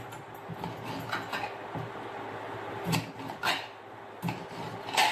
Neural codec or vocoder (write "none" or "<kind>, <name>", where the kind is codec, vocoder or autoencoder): none